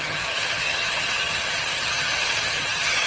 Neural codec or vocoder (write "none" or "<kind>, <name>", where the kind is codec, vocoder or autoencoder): vocoder, HiFi-GAN